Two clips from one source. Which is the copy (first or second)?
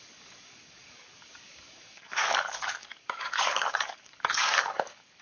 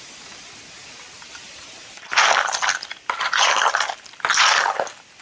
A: first